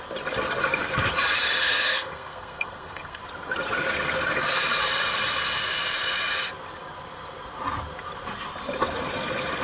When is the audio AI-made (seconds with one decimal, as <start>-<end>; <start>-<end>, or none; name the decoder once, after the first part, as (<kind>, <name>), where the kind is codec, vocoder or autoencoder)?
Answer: 1.6-3.2 (codec, SNAC)